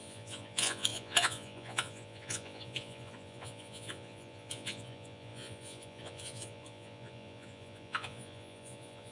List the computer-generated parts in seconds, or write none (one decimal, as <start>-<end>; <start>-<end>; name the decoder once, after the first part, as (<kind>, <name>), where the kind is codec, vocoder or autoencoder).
0.0-9.1 (vocoder, Vocos)